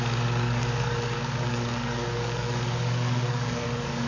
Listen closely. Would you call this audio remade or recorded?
remade